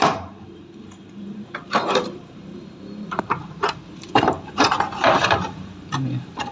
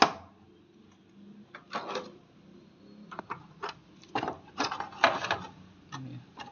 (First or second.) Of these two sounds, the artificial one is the first